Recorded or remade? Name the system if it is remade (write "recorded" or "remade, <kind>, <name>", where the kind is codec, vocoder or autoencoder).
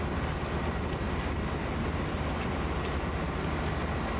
recorded